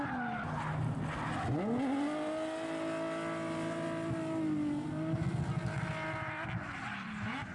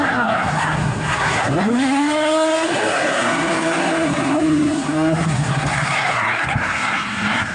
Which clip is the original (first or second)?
first